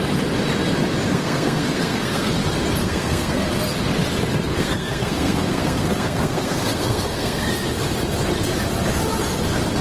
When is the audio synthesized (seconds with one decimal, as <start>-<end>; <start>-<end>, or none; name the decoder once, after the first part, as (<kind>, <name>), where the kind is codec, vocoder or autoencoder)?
1.1-2.3 (codec, SNAC); 2.8-3.5; 4.5-7.5

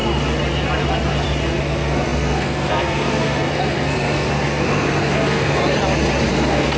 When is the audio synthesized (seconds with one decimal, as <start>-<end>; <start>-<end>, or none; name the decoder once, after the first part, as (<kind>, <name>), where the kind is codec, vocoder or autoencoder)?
1.6-5.6 (codec, SNAC); 6.3-6.8

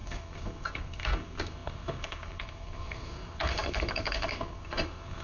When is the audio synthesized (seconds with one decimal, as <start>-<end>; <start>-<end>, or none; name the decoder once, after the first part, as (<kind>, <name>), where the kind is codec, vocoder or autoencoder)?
0.0-5.2 (codec, SNAC)

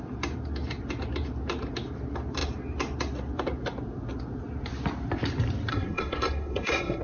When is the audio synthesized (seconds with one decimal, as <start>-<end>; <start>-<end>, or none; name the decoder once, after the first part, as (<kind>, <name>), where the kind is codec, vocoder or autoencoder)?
5.7-7.0 (codec, SNAC)

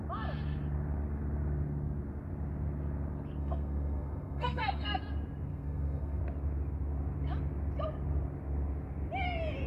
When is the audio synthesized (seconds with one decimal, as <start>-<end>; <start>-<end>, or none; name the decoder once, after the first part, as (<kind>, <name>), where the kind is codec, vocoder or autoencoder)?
3.4-5.0 (codec, SNAC); 5.5-6.2